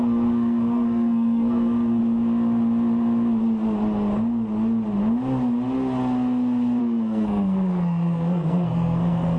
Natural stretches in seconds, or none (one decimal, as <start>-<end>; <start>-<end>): 2.0-6.8